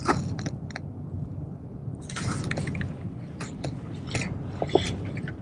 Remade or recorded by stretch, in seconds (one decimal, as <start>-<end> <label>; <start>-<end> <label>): 0.0-5.4 recorded